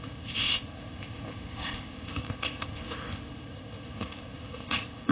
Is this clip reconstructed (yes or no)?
yes